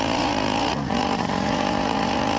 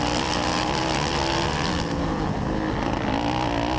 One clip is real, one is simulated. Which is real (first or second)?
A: second